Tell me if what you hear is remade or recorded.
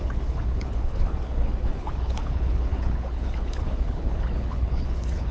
remade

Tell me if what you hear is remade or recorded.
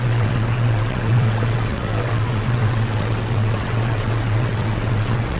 remade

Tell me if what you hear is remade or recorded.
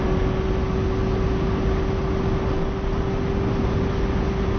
recorded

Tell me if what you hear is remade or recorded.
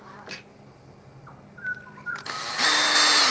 recorded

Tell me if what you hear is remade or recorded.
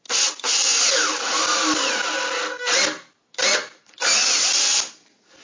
recorded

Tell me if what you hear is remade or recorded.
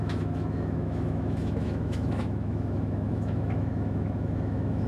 remade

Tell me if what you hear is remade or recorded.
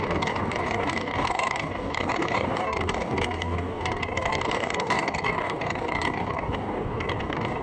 remade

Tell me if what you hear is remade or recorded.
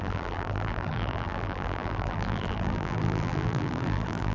remade